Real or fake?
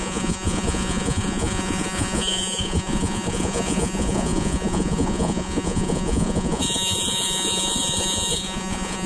fake